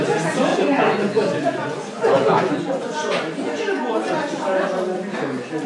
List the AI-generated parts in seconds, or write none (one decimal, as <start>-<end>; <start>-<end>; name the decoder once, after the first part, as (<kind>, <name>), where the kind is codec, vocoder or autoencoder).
0.5-3.9 (vocoder, Vocos)